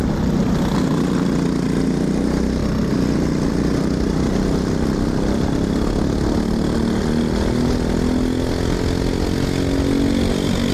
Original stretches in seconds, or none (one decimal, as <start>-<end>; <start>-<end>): 0.0-10.7